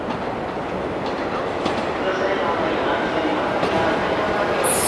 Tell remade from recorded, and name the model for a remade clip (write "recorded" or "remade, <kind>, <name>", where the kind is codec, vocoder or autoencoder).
recorded